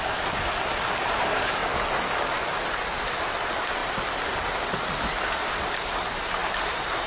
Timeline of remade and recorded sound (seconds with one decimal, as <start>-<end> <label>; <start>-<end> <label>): 0.0-7.1 recorded